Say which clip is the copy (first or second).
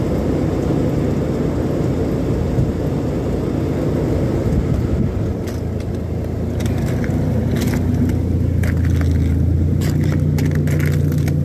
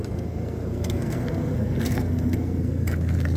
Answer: second